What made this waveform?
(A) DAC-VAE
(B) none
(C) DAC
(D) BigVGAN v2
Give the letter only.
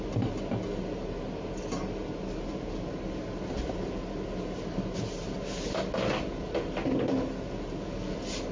B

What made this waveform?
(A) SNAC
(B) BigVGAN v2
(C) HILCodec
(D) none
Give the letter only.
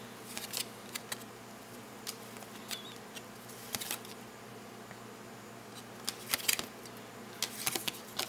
D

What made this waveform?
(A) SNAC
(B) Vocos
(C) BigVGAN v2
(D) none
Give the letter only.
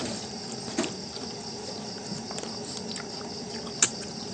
D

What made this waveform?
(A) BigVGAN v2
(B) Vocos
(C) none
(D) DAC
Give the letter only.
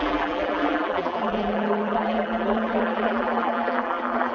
A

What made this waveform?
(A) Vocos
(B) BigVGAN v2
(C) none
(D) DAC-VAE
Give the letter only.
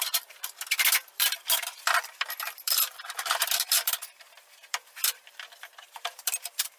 B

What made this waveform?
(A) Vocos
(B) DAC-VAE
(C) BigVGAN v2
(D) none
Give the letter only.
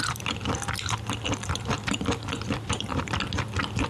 C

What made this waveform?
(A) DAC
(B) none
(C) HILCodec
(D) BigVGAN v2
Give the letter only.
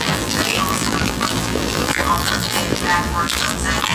D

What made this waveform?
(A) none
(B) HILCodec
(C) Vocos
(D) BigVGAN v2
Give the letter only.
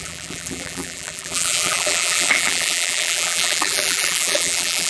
D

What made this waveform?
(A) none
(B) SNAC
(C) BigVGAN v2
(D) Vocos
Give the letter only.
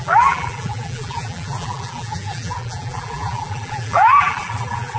C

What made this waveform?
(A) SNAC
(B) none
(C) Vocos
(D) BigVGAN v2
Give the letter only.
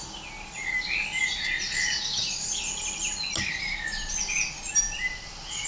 B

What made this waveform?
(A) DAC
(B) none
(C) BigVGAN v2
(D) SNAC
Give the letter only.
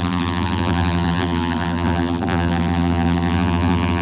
C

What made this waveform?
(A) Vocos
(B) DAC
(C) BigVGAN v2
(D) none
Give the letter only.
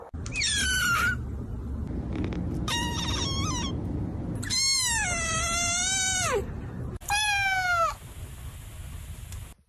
D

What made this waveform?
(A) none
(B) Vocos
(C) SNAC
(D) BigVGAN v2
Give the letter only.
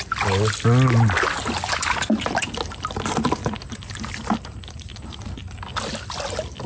A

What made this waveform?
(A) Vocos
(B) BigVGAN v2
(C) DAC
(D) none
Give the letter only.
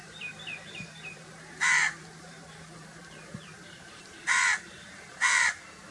B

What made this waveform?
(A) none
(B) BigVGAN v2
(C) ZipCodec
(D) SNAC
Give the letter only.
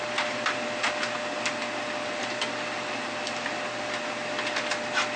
A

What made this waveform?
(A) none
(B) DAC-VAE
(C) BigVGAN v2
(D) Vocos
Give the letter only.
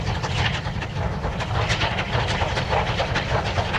A